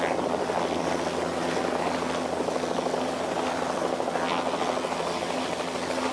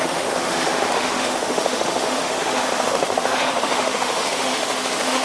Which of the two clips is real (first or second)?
first